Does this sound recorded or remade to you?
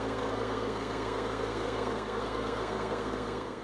remade